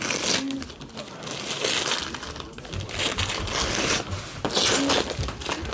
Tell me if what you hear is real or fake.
real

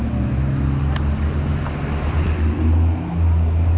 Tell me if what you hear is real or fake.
real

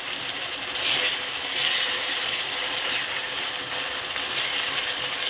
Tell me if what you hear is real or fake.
real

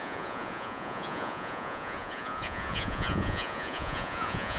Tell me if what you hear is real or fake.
fake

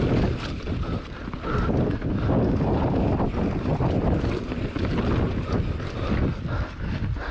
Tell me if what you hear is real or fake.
real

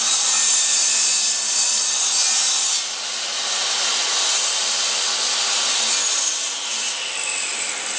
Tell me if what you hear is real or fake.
real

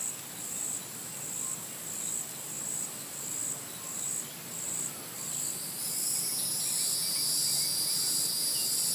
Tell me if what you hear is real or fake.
real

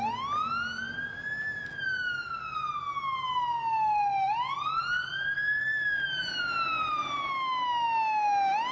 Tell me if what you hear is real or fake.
real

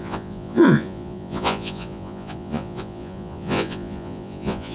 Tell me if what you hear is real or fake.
fake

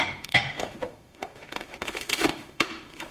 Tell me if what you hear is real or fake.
fake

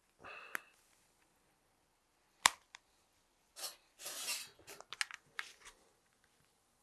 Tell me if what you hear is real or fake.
real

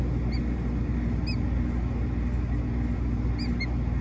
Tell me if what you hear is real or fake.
real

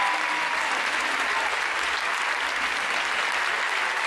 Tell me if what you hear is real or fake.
real